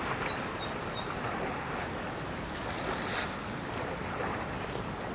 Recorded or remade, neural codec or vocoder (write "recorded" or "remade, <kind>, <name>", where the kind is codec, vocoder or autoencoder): recorded